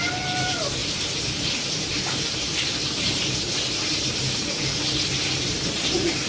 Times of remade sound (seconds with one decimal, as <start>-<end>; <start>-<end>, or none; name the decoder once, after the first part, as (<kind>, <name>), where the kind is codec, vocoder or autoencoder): 0.0-6.3 (vocoder, BigVGAN v2)